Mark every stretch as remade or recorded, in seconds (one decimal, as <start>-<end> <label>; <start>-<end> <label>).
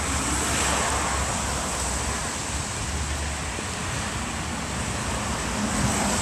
0.0-6.2 recorded